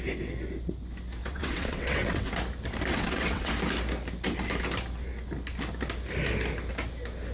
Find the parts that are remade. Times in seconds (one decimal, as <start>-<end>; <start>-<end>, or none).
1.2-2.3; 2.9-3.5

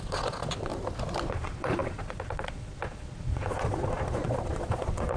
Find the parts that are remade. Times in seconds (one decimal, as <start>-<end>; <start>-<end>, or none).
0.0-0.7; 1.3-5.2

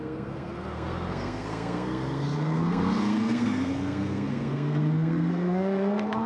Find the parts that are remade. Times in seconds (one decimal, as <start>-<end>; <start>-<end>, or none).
0.0-6.3

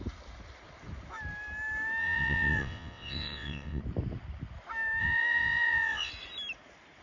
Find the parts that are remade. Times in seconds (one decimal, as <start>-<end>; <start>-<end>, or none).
2.0-3.8; 5.0-6.1

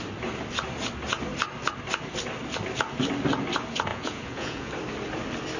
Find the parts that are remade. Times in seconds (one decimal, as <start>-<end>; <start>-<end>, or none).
3.9-4.7